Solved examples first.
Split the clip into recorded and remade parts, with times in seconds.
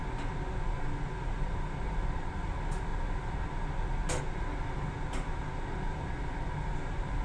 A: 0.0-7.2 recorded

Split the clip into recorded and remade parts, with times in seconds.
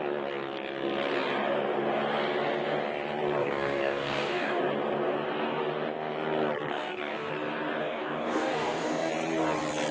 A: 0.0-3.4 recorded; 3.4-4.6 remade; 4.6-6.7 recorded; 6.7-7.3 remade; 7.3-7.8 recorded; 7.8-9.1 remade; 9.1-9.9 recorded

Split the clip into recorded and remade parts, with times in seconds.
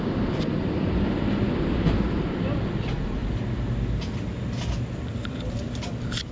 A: 0.0-6.3 recorded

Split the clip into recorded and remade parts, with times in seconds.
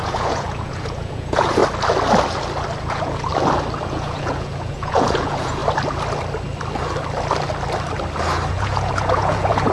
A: 0.0-1.6 remade; 1.6-2.8 recorded; 2.8-3.3 remade; 3.3-3.9 recorded; 3.9-5.6 remade; 5.6-8.5 recorded; 8.5-9.7 remade